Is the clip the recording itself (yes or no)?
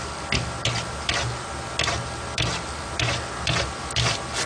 yes